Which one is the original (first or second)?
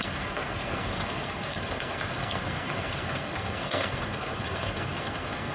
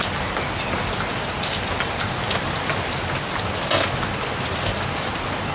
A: second